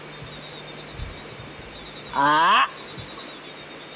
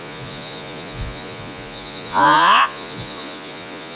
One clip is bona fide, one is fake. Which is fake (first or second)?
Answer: second